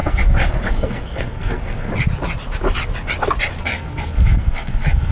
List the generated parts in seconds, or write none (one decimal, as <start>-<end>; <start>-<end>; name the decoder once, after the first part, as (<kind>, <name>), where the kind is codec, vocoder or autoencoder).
0.0-1.9 (codec, SNAC); 3.6-5.1

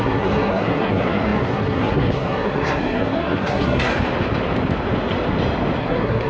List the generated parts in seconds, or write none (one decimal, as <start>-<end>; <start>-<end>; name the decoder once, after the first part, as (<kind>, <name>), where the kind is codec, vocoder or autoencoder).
0.0-3.9 (codec, SNAC); 5.8-6.3

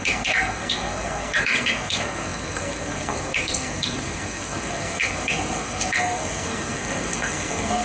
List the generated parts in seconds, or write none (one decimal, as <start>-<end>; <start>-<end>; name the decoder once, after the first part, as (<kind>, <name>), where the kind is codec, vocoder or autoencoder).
0.0-7.8 (codec, SNAC)

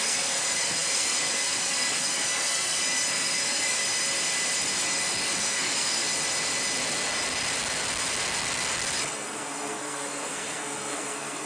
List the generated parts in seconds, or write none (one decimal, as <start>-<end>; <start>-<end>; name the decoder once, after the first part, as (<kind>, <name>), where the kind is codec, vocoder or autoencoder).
0.0-3.8 (codec, SNAC); 5.4-6.0; 9.0-11.5

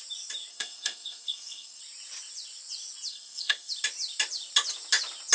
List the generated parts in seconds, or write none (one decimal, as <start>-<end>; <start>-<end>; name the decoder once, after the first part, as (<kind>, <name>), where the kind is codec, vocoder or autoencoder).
0.5-1.8 (codec, SNAC); 3.1-3.7